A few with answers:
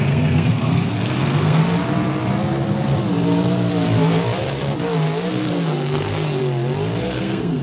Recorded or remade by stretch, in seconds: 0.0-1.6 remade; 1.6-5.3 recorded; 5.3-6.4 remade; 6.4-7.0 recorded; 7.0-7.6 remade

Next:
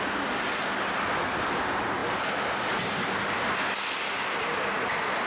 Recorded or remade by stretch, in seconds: 0.0-5.3 recorded

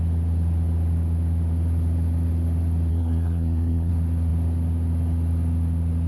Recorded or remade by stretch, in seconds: 0.0-2.9 recorded; 2.9-3.9 remade; 3.9-6.1 recorded